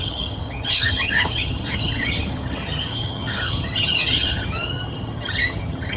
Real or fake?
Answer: fake